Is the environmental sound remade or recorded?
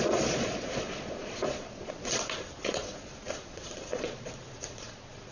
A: remade